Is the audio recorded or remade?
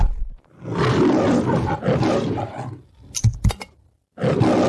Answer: recorded